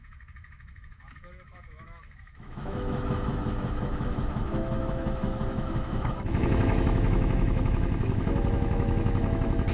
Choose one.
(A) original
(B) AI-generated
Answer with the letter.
B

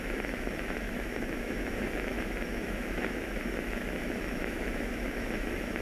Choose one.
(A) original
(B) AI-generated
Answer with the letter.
B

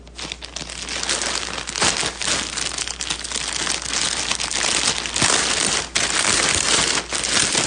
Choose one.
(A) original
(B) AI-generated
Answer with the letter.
A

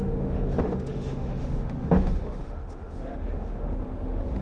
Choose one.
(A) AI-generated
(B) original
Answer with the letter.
A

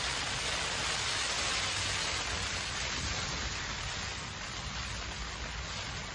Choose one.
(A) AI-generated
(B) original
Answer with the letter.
B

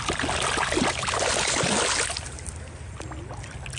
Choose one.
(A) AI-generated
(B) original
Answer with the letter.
B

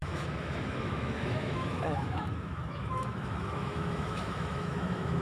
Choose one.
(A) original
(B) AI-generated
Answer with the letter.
B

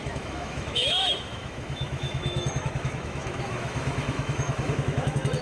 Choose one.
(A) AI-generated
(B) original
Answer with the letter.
A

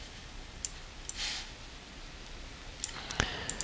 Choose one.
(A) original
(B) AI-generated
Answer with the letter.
A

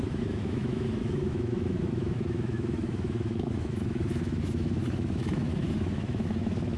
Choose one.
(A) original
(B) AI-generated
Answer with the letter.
B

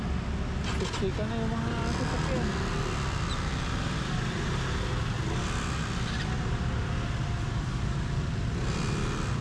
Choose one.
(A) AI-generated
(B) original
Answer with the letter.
B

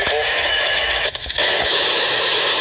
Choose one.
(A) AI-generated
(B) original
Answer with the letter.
A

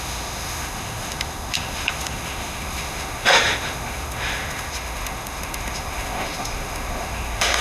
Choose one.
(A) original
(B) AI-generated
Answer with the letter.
B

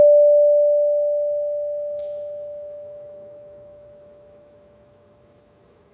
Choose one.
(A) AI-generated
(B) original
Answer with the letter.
A